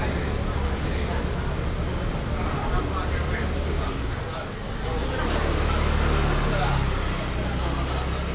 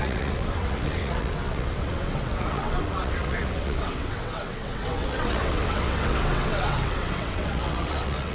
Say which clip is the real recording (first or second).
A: first